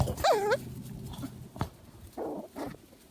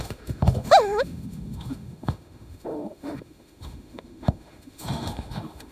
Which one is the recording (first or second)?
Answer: first